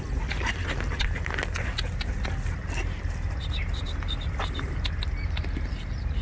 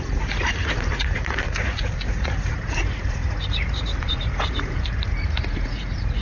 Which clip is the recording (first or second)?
first